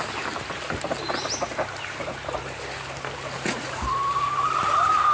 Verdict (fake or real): real